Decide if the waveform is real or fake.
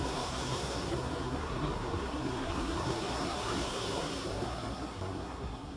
fake